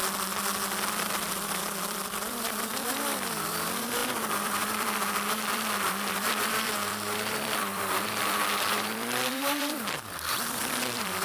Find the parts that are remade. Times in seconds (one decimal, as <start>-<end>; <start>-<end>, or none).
1.3-11.2